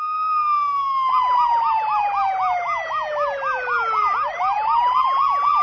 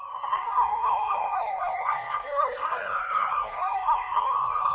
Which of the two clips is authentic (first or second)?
first